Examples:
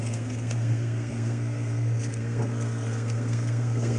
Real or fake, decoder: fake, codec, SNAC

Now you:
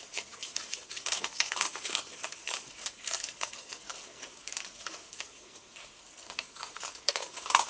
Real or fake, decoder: fake, codec, SNAC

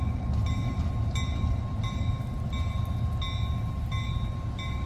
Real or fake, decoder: real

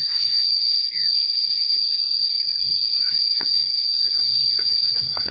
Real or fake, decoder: fake, codec, SNAC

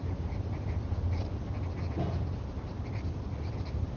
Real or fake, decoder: real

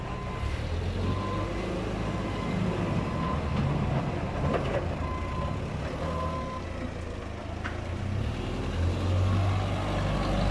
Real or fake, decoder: real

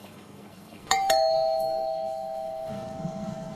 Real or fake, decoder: fake, codec, SNAC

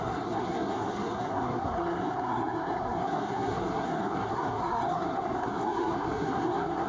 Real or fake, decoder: fake, codec, SNAC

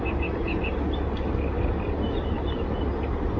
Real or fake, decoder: real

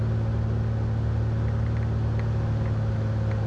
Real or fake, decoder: real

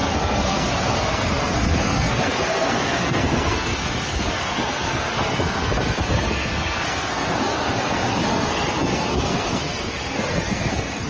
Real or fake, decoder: fake, codec, SNAC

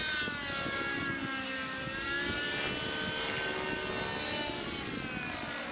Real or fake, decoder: real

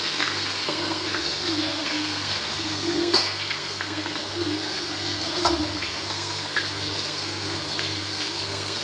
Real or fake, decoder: fake, codec, SNAC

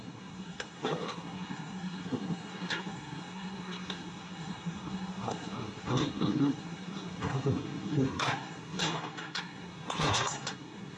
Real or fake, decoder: fake, codec, SNAC